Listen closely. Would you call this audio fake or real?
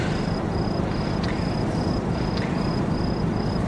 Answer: fake